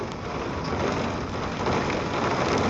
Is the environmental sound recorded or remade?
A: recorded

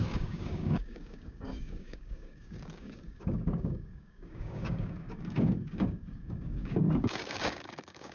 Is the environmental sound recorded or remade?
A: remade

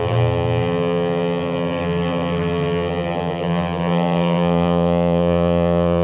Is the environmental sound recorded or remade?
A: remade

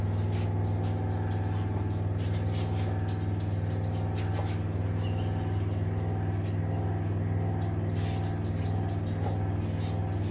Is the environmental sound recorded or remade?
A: recorded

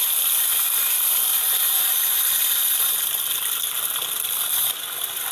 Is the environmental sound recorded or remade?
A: remade